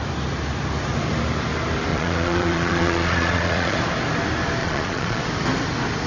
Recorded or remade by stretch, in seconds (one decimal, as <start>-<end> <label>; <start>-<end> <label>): 0.0-1.9 recorded; 1.9-3.8 remade; 3.8-4.6 recorded; 4.6-5.2 remade; 5.2-6.1 recorded